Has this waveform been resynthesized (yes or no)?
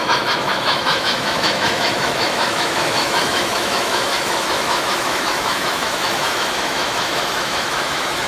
yes